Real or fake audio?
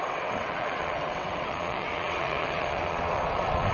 fake